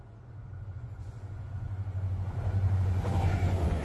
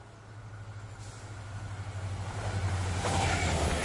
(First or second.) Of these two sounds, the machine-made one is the first